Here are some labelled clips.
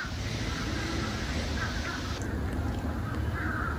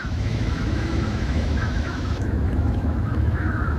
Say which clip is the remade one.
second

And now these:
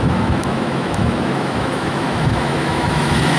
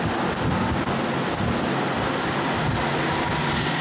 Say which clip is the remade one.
first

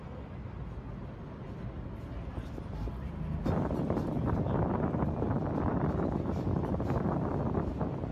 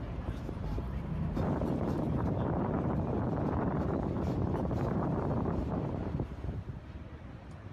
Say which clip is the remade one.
second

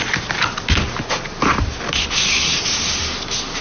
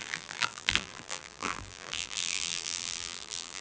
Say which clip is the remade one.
second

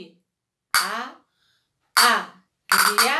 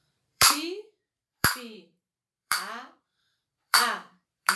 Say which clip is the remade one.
second